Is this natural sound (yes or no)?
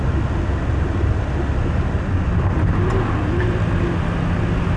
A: yes